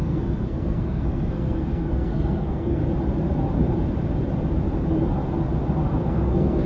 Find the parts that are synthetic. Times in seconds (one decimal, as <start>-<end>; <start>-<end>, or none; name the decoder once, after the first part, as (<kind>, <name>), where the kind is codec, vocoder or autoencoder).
0.0-2.8 (codec, SNAC); 6.0-6.7